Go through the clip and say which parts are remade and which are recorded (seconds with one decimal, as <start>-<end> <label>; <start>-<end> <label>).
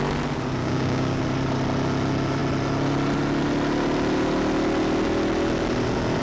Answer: 0.0-0.6 recorded; 0.6-1.2 remade; 1.2-6.2 recorded